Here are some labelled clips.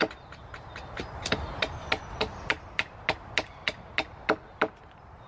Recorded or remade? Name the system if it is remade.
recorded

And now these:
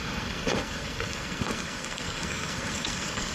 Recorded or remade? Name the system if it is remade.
remade, codec, SNAC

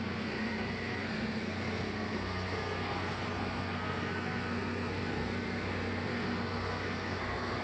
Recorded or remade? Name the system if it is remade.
remade, codec, SNAC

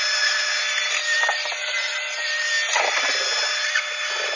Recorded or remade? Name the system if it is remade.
recorded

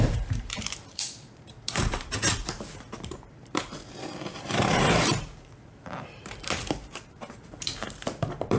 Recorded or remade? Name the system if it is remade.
remade, vocoder, BigVGAN v2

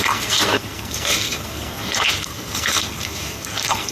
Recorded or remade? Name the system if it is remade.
remade, codec, SNAC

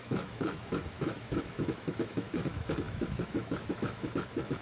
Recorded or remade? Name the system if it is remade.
remade, autoencoder, DAC-VAE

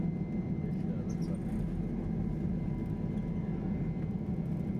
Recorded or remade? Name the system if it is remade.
recorded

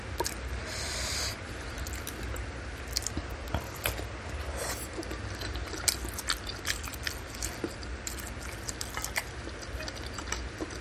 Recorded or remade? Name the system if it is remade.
recorded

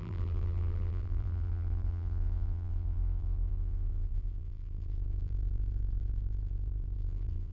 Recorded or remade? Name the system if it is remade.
remade, vocoder, BigVGAN v2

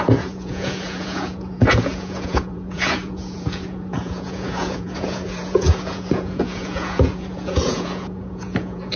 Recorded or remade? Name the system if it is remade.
remade, vocoder, Vocos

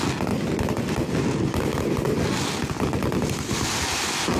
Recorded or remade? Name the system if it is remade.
recorded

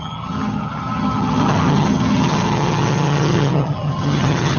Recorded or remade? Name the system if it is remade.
remade, vocoder, HiFi-GAN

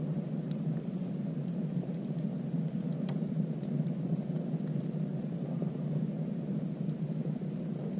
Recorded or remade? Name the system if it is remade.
recorded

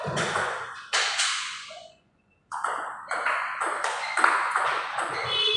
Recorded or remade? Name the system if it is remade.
remade, vocoder, Vocos